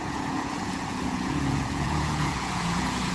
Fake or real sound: fake